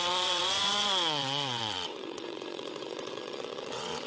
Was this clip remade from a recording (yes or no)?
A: yes